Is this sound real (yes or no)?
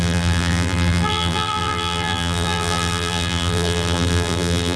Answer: no